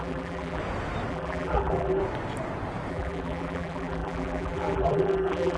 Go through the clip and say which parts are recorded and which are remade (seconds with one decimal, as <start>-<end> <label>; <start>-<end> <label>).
0.0-0.6 remade; 0.6-1.1 recorded; 1.1-2.0 remade; 2.0-2.9 recorded; 2.9-5.6 remade

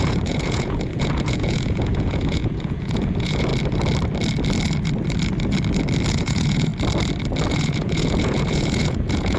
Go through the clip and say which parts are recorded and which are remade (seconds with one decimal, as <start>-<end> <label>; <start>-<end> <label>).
0.0-3.5 remade; 3.5-6.1 recorded; 6.1-6.7 remade; 6.7-7.5 recorded; 7.5-9.4 remade

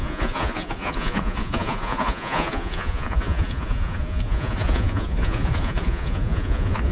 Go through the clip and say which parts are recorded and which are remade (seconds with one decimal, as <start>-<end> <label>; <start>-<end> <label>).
0.0-6.9 remade

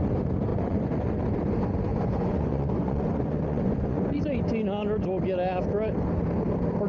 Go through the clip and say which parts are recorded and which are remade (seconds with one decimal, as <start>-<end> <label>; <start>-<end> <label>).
0.0-0.5 recorded; 0.5-1.2 remade; 1.2-1.9 recorded; 1.9-4.2 remade; 4.2-6.9 recorded

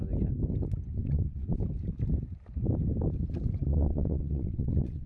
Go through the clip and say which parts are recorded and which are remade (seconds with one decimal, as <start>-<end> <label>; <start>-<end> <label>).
0.0-1.0 recorded; 1.0-1.6 remade; 1.6-3.7 recorded; 3.7-5.1 remade

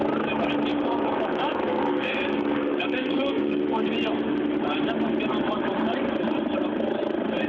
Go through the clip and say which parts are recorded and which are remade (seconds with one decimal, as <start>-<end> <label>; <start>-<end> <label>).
0.0-0.7 recorded; 0.7-3.6 remade; 3.6-7.5 recorded